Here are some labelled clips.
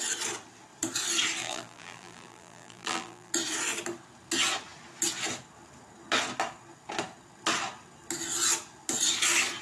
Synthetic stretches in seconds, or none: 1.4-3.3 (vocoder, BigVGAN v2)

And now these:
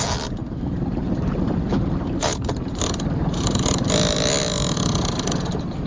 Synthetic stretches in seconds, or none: 0.4-3.9 (vocoder, BigVGAN v2)